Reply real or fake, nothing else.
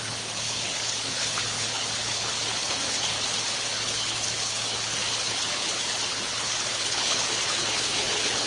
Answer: fake